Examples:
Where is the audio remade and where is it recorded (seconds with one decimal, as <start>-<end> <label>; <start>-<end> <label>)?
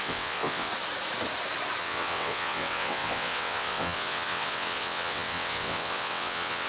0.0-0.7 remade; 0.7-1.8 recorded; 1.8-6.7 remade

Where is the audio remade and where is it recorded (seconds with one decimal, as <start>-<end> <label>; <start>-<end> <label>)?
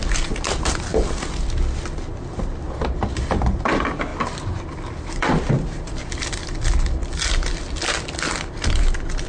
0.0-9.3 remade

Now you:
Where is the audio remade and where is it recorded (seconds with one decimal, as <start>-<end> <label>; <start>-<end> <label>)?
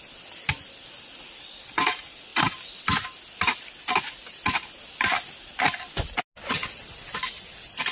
0.0-7.9 recorded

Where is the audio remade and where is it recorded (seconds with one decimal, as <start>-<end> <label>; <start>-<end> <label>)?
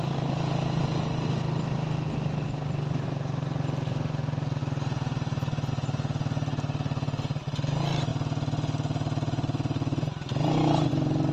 0.0-11.3 recorded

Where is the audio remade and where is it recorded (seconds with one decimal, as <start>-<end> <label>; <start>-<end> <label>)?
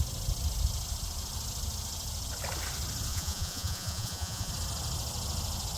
0.0-3.1 recorded; 3.1-4.5 remade; 4.5-5.8 recorded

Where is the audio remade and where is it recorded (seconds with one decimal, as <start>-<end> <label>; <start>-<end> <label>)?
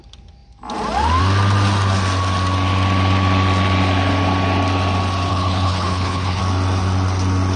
0.0-5.3 recorded; 5.3-6.4 remade; 6.4-7.6 recorded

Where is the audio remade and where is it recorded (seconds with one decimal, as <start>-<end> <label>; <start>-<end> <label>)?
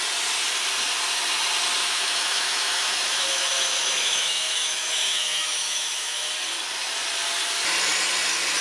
0.0-1.8 recorded; 1.8-6.3 remade; 6.3-8.6 recorded